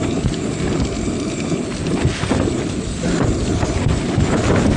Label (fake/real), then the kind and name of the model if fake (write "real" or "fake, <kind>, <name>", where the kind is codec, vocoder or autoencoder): real